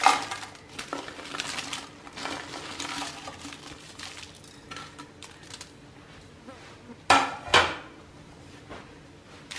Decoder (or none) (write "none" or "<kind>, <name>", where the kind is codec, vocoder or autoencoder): none